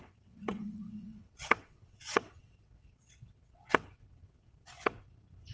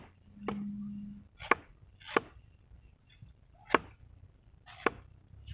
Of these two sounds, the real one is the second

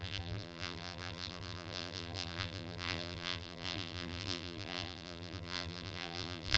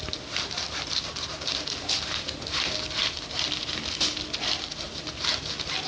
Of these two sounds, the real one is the second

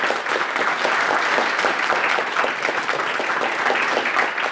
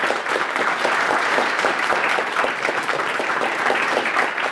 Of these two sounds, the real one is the first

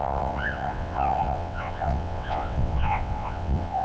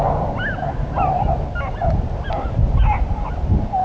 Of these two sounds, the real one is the second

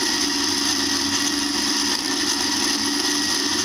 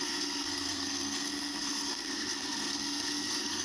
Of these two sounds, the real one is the first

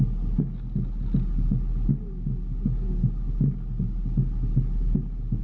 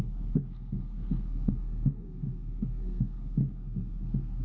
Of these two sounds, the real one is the first